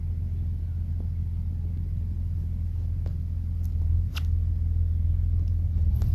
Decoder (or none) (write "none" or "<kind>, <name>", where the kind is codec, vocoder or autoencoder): none